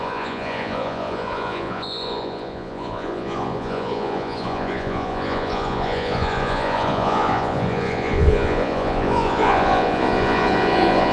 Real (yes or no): no